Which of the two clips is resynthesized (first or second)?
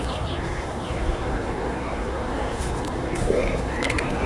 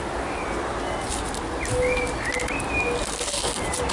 first